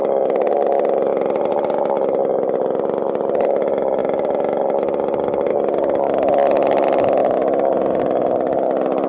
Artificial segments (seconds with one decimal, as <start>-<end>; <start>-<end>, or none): 4.0-5.5